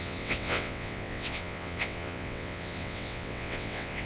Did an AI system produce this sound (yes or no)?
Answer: yes